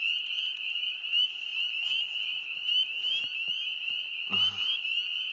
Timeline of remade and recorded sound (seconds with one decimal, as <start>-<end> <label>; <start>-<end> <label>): 0.0-5.3 recorded